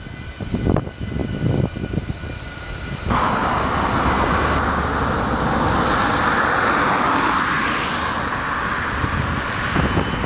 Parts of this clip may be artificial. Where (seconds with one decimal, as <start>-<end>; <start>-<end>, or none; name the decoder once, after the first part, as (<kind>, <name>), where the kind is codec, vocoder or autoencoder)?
none